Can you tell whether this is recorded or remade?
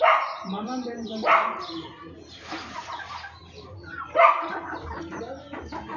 remade